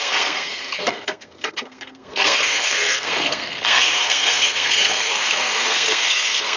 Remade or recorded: remade